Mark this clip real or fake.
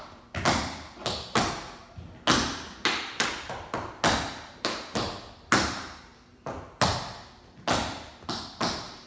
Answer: real